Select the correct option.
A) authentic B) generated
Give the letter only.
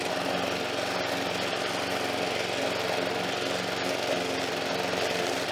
A